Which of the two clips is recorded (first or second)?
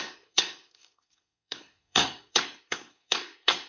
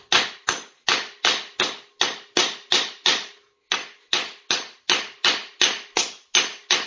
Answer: second